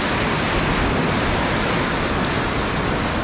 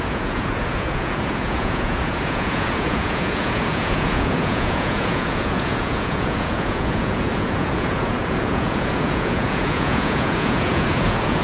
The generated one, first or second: second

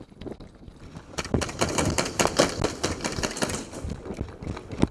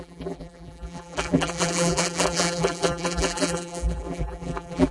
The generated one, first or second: second